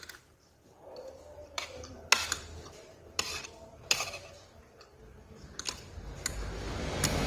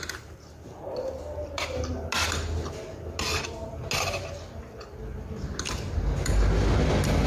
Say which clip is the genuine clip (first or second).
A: second